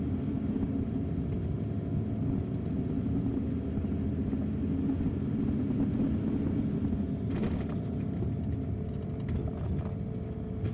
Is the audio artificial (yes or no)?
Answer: no